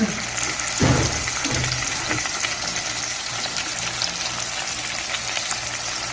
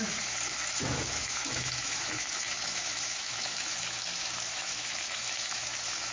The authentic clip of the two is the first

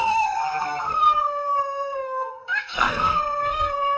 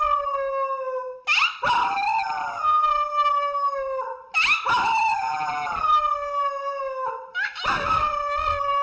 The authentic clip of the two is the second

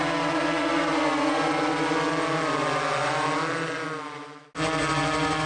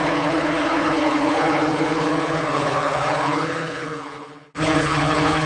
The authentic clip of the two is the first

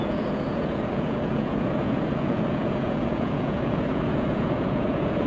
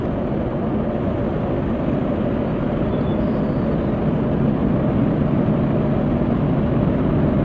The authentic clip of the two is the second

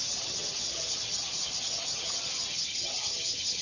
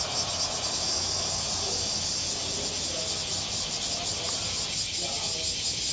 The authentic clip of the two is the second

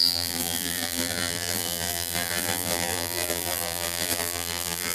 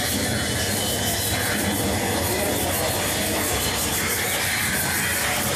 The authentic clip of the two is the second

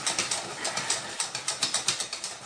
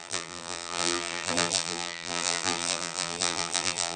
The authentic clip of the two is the first